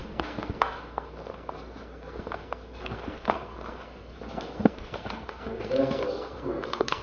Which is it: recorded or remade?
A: remade